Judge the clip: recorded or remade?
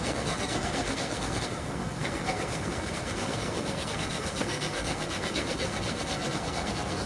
remade